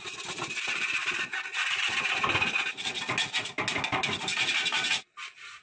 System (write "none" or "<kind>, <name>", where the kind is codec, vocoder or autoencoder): none